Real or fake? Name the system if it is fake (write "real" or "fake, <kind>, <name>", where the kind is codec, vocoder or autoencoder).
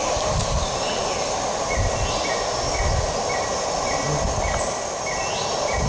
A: real